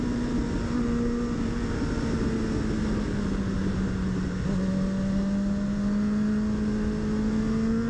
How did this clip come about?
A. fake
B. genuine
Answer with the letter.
B